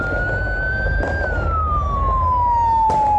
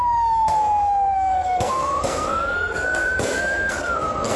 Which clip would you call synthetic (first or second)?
second